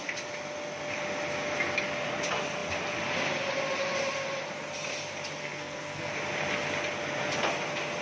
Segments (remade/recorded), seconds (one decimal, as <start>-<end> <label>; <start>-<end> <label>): 0.0-5.4 recorded; 5.4-6.1 remade; 6.1-8.0 recorded